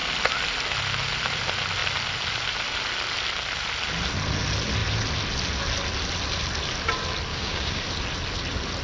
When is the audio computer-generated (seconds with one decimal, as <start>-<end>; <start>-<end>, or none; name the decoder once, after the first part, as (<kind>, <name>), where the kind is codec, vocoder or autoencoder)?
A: 7.3-7.8 (codec, DAC)